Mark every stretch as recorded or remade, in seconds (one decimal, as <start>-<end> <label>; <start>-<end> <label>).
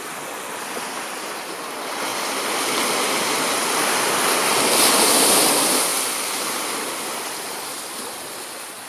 0.0-5.9 recorded; 5.9-7.1 remade; 7.1-8.9 recorded